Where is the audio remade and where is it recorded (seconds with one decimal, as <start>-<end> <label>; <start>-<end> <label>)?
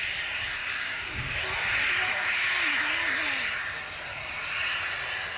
0.0-0.6 recorded; 0.6-1.4 remade; 1.4-5.4 recorded